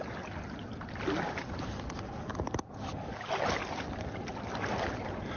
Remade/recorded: recorded